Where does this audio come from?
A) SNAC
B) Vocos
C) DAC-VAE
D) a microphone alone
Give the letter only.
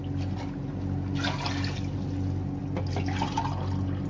D